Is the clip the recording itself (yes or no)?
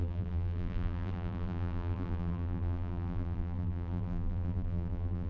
no